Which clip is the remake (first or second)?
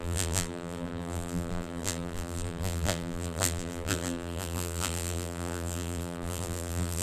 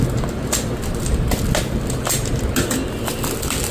first